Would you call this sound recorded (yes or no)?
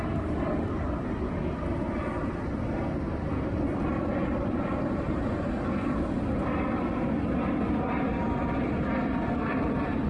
no